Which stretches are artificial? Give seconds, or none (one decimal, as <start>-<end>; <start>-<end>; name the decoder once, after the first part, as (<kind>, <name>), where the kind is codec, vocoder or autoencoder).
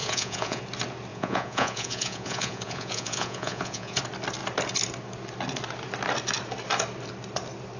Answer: 0.0-0.6 (vocoder, Vocos); 1.1-4.0